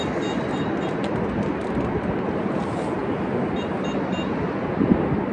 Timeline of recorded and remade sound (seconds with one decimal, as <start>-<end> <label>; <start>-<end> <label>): 0.0-5.3 recorded